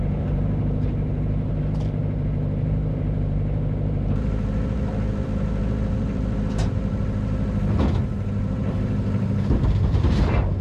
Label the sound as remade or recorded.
remade